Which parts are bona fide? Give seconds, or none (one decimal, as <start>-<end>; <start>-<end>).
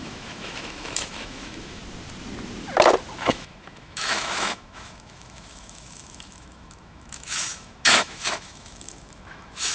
1.8-3.2